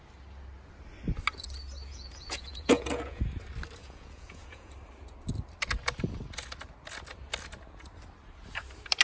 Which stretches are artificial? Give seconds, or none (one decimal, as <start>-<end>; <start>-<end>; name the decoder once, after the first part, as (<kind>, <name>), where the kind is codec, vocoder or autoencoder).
1.9-3.2 (vocoder, Vocos); 3.8-4.7